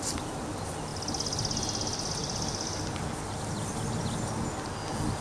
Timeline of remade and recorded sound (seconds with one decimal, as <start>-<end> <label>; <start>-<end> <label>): 0.0-5.2 recorded

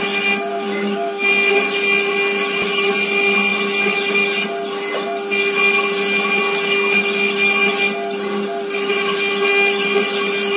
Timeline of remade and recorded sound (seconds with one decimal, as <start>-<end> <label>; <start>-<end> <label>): 0.0-0.5 recorded; 0.5-1.3 remade; 1.3-10.6 recorded

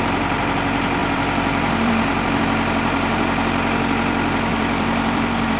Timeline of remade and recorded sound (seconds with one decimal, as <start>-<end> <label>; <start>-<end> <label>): 0.0-1.0 recorded; 1.0-2.4 remade; 2.4-4.5 recorded; 4.5-5.6 remade

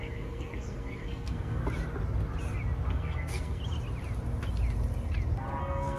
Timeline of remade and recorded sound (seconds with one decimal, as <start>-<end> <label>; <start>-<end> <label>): 0.0-1.6 remade; 1.6-2.9 recorded; 2.9-3.6 remade; 3.6-5.6 recorded; 5.6-6.0 remade

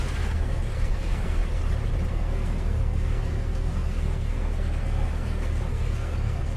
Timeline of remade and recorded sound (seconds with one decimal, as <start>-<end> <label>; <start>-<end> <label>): 0.0-1.6 remade; 1.6-2.1 recorded; 2.1-6.6 remade

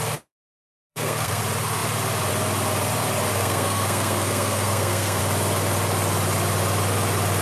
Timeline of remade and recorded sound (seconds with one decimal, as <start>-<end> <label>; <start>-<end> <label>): 0.0-0.9 recorded; 0.9-1.4 remade; 1.4-3.3 recorded; 3.3-5.2 remade; 5.2-7.4 recorded